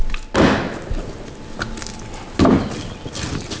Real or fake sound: real